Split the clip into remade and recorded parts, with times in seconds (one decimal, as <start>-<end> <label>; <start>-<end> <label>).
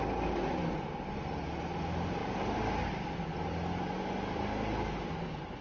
0.0-5.6 recorded